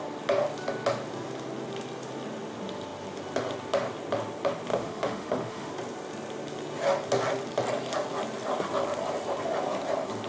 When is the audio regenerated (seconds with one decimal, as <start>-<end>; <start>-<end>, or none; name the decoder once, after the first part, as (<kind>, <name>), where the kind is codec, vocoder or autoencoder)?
4.7-5.7 (autoencoder, DAC-VAE)